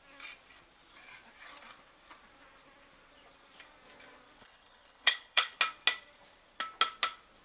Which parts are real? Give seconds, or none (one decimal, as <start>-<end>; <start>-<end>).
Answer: 0.0-4.4; 5.6-7.4